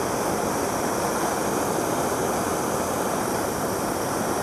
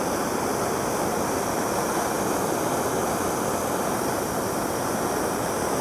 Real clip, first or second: second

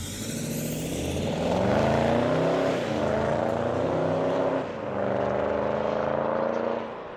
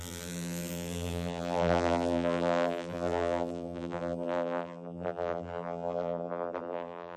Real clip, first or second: first